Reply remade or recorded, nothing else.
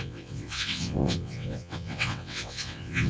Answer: remade